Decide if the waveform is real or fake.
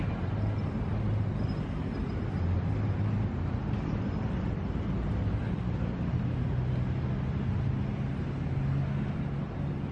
real